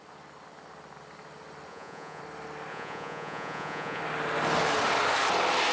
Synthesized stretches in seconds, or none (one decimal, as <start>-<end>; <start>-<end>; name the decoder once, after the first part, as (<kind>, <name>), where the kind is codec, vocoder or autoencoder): 1.7-2.2 (vocoder, Vocos); 2.7-4.0